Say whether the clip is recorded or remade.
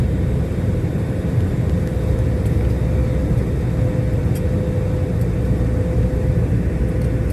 recorded